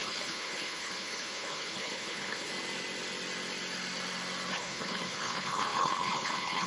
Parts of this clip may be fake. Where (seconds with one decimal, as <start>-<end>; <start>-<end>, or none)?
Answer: 0.0-2.5; 4.5-6.7